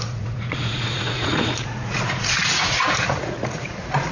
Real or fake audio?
fake